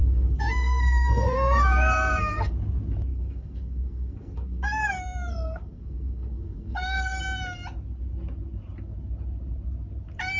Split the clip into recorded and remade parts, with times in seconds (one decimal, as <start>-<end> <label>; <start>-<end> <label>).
0.0-2.5 remade; 2.5-3.1 recorded; 3.1-7.2 remade; 7.2-10.4 recorded